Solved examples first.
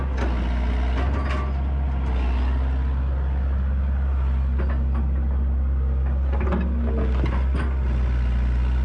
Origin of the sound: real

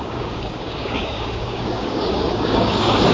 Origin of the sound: fake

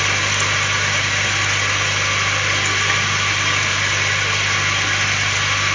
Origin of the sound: real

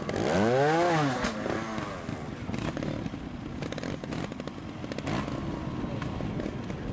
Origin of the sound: real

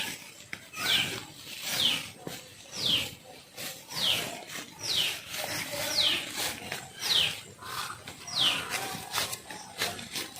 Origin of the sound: real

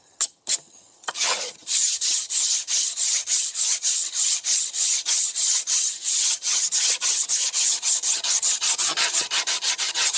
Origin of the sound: fake